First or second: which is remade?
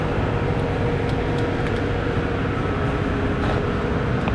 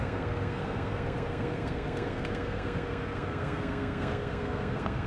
second